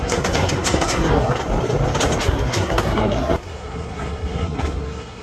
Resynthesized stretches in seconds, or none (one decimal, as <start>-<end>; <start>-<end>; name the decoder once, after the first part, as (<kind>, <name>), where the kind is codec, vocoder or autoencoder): 0.0-1.4 (codec, SNAC); 2.2-5.2

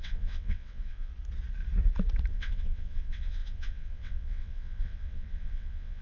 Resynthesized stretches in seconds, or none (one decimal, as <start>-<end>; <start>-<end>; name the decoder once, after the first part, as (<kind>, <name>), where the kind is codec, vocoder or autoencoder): 0.0-1.1 (vocoder, WaveNeXt); 2.3-6.0

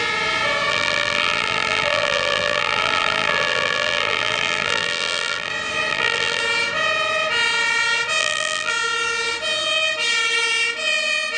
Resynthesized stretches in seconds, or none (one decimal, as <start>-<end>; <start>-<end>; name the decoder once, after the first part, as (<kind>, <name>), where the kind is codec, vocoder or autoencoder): 0.7-5.5 (vocoder, BigVGAN v2); 5.9-6.4; 8.2-8.7

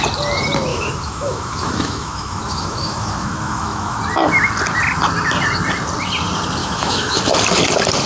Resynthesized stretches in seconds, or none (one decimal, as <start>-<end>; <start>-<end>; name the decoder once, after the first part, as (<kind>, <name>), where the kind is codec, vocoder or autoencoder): 0.7-4.0 (autoencoder, DAC-VAE); 6.6-7.1

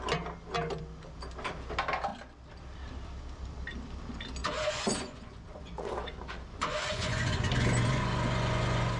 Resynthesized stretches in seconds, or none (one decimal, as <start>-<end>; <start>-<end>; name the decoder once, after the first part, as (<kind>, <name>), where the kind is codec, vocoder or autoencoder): 4.4-9.0 (vocoder, Vocos)

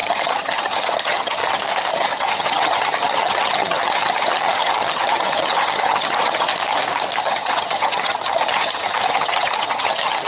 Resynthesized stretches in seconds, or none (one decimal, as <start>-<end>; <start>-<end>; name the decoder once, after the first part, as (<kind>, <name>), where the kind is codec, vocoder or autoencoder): 0.0-1.4 (vocoder, HiFi-GAN); 1.9-6.5; 7.2-10.3

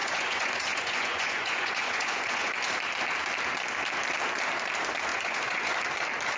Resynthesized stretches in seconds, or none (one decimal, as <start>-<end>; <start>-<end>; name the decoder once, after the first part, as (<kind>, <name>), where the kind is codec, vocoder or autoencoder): 0.0-2.5 (vocoder, Vocos); 5.1-5.7

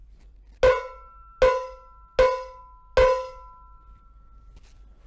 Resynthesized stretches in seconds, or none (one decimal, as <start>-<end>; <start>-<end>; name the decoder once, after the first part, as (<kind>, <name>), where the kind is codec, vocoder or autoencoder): none